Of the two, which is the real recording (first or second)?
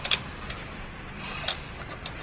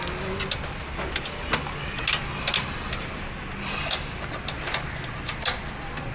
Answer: second